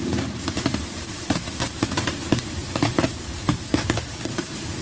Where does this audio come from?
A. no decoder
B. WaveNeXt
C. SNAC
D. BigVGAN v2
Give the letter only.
D